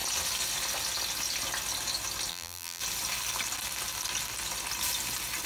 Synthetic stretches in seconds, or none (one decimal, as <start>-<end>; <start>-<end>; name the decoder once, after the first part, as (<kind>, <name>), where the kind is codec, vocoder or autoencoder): 2.3-2.8 (vocoder, BigVGAN v2)